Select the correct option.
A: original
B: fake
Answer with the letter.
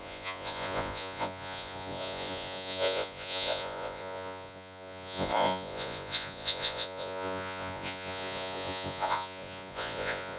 B